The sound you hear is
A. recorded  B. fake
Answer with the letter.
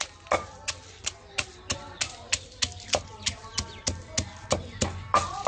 A